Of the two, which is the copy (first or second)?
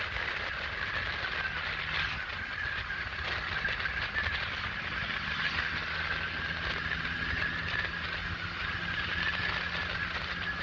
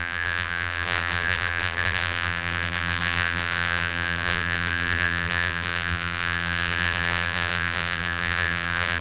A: second